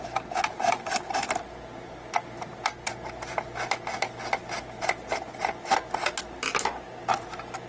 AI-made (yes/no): no